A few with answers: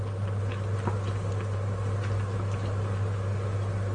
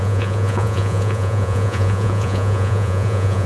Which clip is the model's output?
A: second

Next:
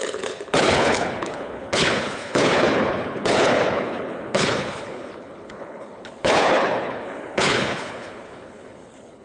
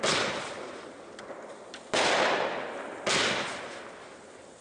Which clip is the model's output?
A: first